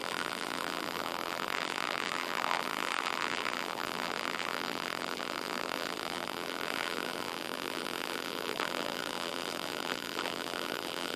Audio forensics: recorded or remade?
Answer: remade